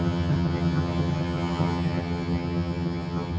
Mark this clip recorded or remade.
remade